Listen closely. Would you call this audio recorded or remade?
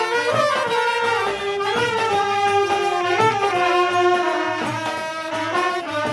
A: recorded